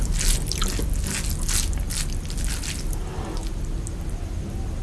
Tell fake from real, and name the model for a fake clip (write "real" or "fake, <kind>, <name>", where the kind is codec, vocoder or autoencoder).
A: real